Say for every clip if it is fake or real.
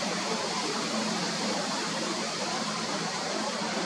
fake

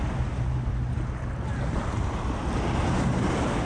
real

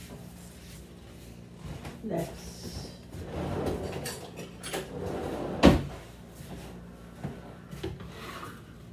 real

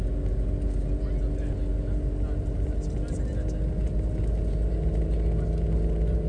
real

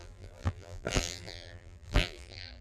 fake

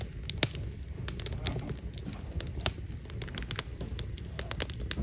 real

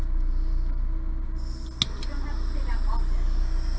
real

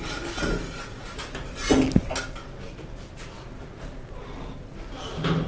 real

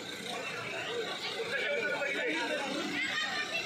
real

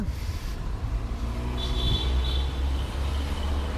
real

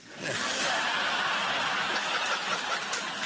real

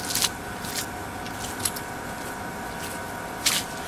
real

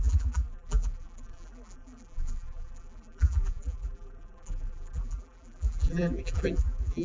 fake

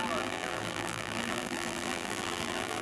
fake